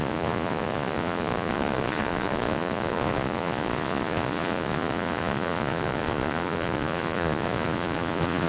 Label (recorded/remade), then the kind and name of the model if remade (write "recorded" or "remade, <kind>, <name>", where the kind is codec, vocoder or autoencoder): remade, vocoder, Vocos